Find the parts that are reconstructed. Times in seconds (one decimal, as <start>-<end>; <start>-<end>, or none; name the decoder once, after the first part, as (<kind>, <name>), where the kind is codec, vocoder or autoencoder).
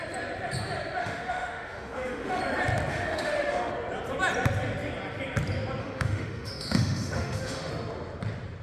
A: 1.0-2.4 (autoencoder, DAC-VAE); 2.9-3.7; 5.8-7.7